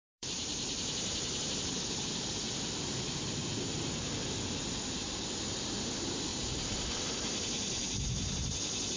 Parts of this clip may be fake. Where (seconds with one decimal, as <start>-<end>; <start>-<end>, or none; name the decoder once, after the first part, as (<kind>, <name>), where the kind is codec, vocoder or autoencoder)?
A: 0.0-1.9 (vocoder, BigVGAN v2); 6.3-7.0